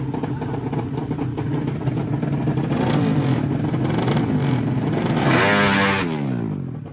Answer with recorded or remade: recorded